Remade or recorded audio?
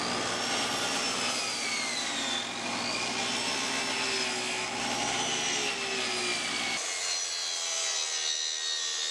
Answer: recorded